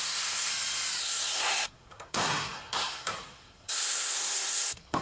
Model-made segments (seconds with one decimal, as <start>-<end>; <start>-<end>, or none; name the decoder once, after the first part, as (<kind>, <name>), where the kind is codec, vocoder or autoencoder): 0.0-0.5 (codec, SNAC); 1.0-5.0